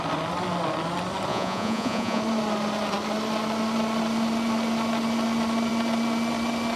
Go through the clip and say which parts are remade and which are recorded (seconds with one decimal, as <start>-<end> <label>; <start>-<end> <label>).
0.0-1.3 recorded; 1.3-2.2 remade; 2.2-6.8 recorded